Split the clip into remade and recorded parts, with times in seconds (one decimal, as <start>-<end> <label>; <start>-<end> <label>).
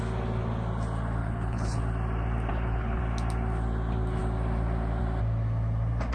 0.0-1.2 recorded; 1.2-1.8 remade; 1.8-2.5 recorded; 2.5-3.0 remade; 3.0-6.1 recorded